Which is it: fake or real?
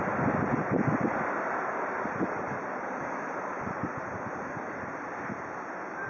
fake